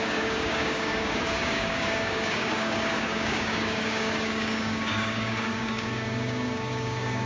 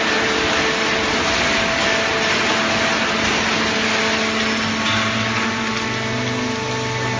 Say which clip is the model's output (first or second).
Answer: first